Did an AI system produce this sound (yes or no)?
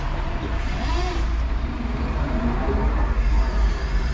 yes